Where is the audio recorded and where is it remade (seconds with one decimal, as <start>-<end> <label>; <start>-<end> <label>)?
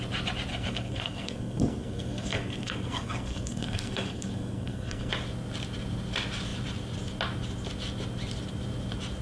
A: 0.0-0.5 recorded; 0.5-5.1 remade; 5.1-9.2 recorded